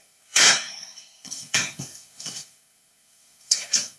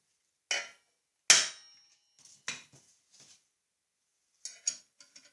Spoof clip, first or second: first